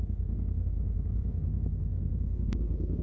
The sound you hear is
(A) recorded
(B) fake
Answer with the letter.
B